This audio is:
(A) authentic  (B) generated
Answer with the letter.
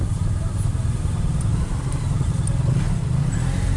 A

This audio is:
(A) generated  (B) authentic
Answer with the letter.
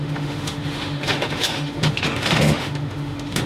A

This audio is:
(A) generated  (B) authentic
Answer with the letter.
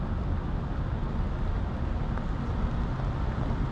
B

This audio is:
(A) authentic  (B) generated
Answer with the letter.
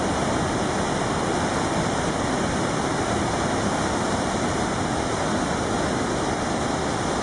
A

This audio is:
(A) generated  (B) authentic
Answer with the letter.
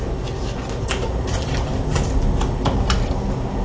B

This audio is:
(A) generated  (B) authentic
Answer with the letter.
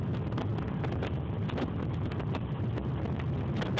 B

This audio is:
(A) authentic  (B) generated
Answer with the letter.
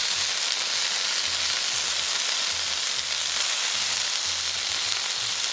A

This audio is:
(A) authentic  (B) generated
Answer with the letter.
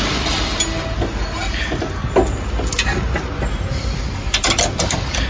A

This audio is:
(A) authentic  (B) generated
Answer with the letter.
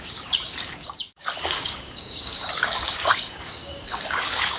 B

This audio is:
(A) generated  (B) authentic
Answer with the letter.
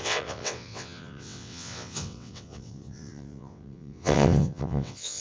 A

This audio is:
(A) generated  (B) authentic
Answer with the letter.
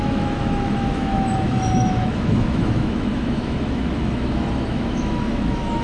A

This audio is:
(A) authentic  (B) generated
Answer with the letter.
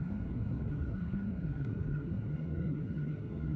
B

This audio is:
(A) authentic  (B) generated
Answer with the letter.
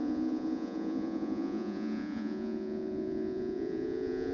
B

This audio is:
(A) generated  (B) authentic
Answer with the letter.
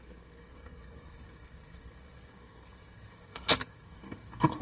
A